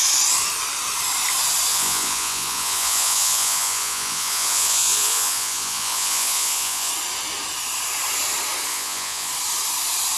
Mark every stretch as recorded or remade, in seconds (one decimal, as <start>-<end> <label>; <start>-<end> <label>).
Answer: 0.0-1.7 recorded; 1.7-6.9 remade; 6.9-8.7 recorded; 8.7-9.3 remade; 9.3-10.2 recorded